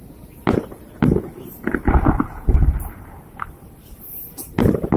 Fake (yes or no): yes